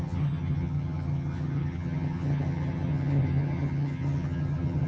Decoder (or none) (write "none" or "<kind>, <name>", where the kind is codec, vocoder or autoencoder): vocoder, HiFi-GAN